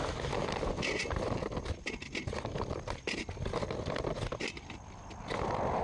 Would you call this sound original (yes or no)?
yes